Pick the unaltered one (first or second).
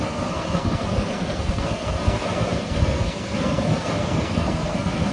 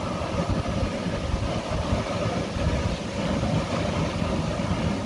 second